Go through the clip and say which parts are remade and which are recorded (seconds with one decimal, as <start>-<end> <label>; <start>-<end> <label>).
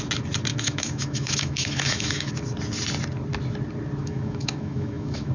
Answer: 0.0-0.5 recorded; 0.5-2.3 remade; 2.3-4.0 recorded; 4.0-5.3 remade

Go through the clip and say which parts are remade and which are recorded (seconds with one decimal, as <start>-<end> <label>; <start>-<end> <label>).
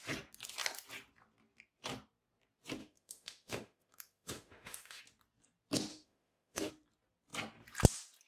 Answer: 0.0-2.8 recorded; 2.8-5.0 remade; 5.0-5.9 recorded; 5.9-6.7 remade; 6.7-8.3 recorded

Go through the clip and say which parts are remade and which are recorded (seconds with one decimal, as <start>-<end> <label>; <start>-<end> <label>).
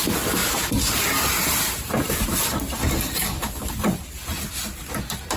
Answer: 0.0-3.2 recorded; 3.2-3.7 remade; 3.7-5.4 recorded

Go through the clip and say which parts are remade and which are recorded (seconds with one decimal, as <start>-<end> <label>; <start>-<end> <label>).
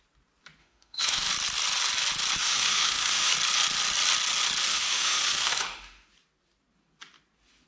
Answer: 0.0-0.6 recorded; 0.6-1.3 remade; 1.3-2.4 recorded; 2.4-3.3 remade; 3.3-4.7 recorded; 4.7-6.1 remade; 6.1-7.7 recorded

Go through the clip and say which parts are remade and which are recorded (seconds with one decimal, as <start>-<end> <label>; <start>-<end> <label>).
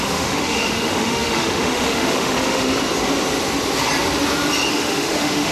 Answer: 0.0-2.7 remade; 2.7-4.7 recorded; 4.7-5.5 remade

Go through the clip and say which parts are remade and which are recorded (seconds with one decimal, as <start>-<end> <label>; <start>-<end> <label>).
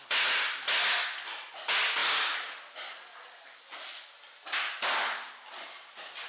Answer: 0.0-6.3 recorded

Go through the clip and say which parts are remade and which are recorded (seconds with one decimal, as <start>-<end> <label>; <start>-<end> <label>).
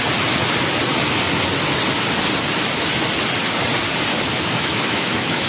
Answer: 0.0-4.1 recorded; 4.1-5.5 remade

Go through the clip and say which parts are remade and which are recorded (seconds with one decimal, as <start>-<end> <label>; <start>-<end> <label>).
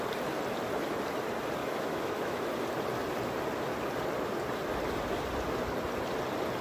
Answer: 0.0-1.6 recorded; 1.6-2.4 remade; 2.4-6.6 recorded